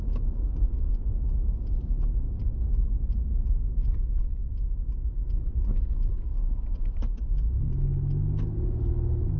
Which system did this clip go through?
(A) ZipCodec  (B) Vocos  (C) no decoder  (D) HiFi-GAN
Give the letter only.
C